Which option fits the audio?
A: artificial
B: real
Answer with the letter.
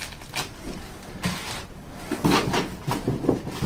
B